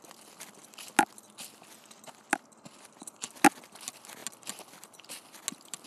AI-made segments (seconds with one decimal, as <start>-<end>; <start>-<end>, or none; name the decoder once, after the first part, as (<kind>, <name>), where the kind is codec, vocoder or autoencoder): none